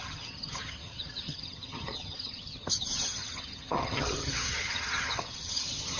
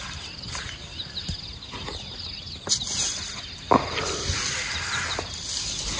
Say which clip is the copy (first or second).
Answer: first